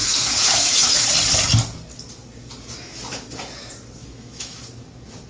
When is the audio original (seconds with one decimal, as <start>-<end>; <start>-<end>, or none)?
1.1-4.0; 4.6-5.3